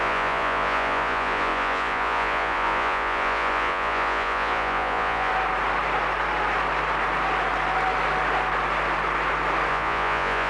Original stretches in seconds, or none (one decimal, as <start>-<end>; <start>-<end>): 5.3-9.7